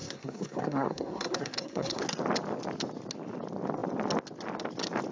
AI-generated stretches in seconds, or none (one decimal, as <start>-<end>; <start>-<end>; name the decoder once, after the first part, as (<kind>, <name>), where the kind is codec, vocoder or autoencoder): 0.0-2.0 (codec, SNAC)